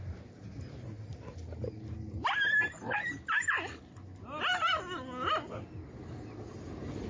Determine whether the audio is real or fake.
real